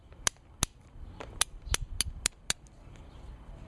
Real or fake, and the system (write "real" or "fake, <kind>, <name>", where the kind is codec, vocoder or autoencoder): real